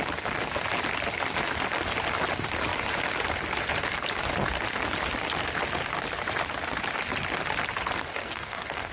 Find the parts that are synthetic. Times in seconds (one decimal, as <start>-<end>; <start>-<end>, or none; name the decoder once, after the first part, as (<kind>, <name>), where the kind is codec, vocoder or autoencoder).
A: 8.2-8.9 (codec, SNAC)